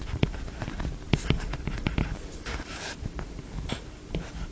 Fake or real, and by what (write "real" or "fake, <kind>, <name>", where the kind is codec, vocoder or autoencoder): fake, vocoder, BigVGAN v2